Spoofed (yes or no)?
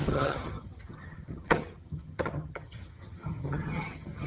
yes